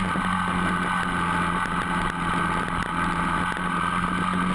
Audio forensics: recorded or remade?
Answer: recorded